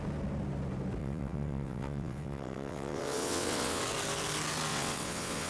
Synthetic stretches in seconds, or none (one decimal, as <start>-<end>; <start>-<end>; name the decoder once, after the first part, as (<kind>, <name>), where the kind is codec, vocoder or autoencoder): 1.0-3.8 (vocoder, WaveNeXt); 4.7-5.5